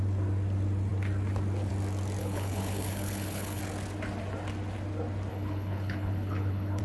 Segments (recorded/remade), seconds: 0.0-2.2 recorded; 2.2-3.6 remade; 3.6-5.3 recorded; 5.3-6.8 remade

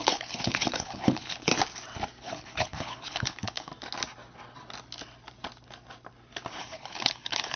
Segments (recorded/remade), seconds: 0.0-1.5 remade; 1.5-2.2 recorded; 2.2-3.7 remade; 3.7-6.5 recorded; 6.5-7.6 remade

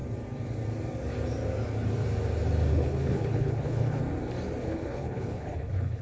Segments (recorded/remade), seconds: 0.0-2.7 recorded; 2.7-4.0 remade; 4.0-4.6 recorded; 4.6-6.0 remade

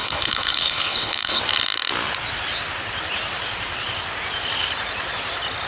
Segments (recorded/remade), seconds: 0.0-1.4 remade; 1.4-5.7 recorded

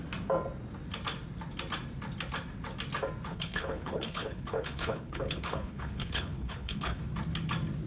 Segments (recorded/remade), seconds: 0.0-3.3 recorded; 3.3-7.0 remade; 7.0-7.9 recorded

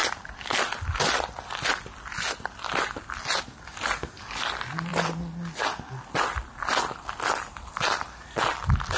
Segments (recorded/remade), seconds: 0.0-9.0 recorded

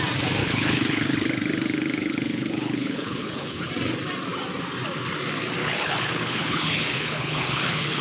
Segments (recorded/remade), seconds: 0.0-0.4 recorded; 0.4-3.7 remade; 3.7-5.6 recorded; 5.6-8.0 remade